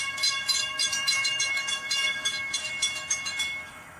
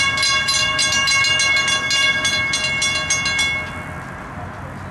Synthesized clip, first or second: first